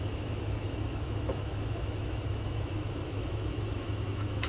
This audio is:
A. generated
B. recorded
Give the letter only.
A